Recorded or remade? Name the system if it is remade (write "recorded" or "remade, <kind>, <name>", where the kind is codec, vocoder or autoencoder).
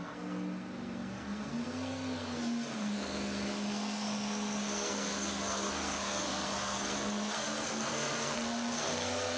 remade, codec, SNAC